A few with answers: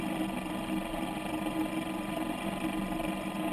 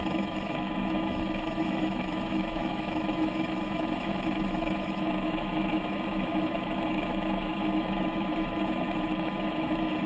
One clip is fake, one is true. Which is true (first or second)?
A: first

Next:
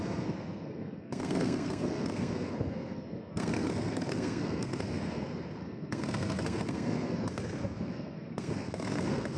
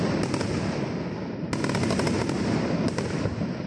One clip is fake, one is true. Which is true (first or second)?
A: second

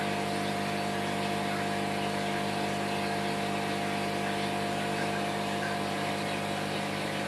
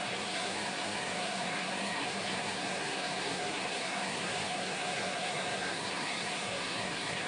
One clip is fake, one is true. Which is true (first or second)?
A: first